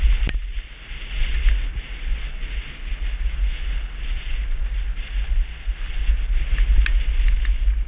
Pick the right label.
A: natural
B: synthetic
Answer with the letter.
A